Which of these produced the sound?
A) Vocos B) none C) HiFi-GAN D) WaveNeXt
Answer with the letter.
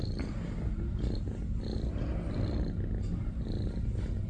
B